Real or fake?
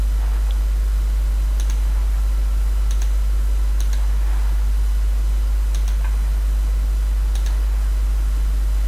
real